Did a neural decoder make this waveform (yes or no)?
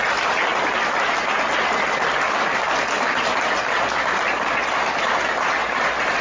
no